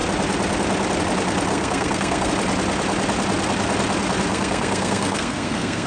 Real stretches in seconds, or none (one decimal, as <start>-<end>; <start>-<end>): 0.0-1.5; 2.3-4.3